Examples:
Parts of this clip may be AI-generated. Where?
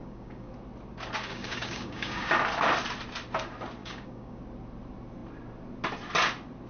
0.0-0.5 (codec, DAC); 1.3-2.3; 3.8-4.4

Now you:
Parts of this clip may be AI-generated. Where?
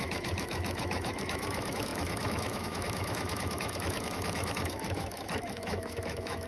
0.0-6.5 (autoencoder, DAC-VAE)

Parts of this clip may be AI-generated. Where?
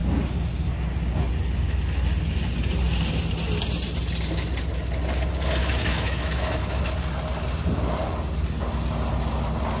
5.6-6.8 (autoencoder, DAC-VAE)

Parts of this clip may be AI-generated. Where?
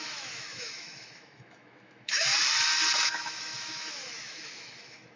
0.0-2.3 (autoencoder, DAC-VAE); 3.0-5.2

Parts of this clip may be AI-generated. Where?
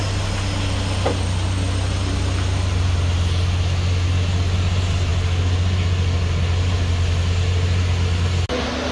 none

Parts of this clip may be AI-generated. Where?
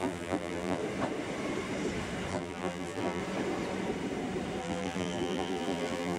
0.0-0.8 (vocoder, BigVGAN v2); 2.3-3.2; 4.6-6.2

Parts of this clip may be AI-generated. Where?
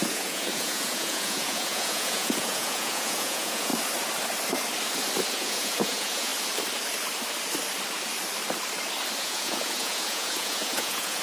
0.0-3.7 (vocoder, Vocos); 5.3-6.3; 9.2-11.2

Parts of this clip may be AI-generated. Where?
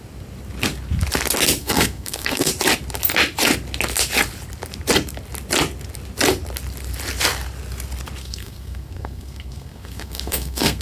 1.6-2.5 (codec, SNAC); 8.2-10.8